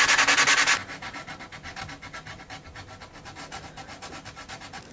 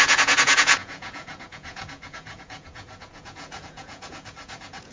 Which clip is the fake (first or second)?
second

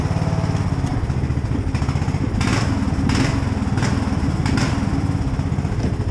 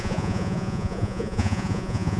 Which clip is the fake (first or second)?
second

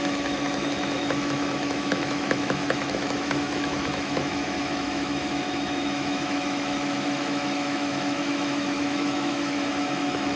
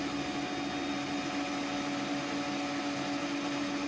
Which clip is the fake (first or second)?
first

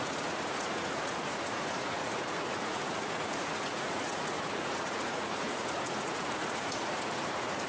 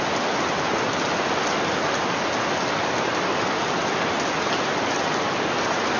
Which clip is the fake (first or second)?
first